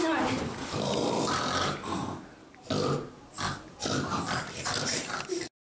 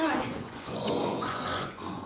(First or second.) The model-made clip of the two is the second